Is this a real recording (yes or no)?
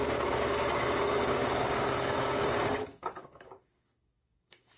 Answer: no